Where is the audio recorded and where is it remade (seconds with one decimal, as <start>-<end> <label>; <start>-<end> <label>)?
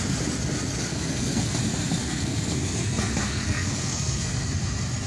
0.0-0.9 recorded; 0.9-1.6 remade; 1.6-2.0 recorded; 2.0-4.5 remade; 4.5-5.1 recorded